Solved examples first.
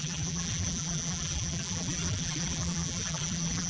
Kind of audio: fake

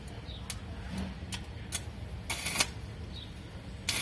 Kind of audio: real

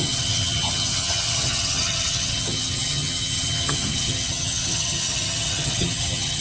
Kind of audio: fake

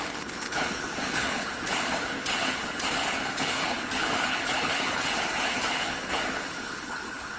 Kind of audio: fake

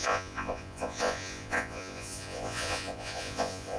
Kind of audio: fake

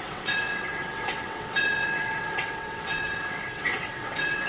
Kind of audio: fake